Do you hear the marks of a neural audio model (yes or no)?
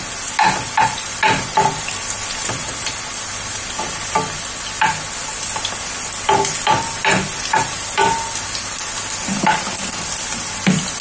no